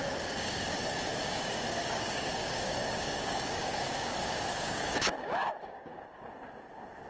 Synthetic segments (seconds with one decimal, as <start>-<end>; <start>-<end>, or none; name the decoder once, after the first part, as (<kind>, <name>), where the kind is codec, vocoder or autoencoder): 0.0-5.9 (codec, DAC)